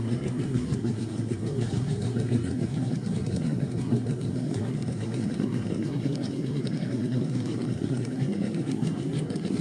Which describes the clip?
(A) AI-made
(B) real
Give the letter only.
A